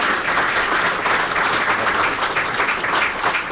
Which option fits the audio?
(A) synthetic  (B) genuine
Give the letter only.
B